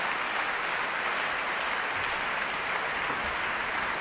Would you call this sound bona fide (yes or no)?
yes